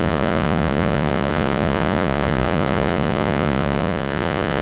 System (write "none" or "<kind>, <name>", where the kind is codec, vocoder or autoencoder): vocoder, Vocos